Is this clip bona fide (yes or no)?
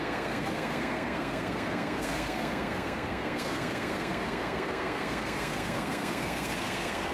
no